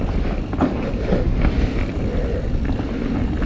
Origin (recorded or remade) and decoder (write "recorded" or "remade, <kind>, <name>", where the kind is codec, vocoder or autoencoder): recorded